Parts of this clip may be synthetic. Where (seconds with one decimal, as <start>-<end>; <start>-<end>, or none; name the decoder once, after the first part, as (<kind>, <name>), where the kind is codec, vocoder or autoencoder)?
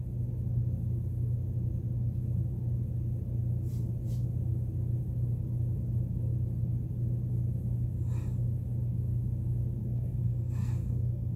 9.8-11.4 (codec, SNAC)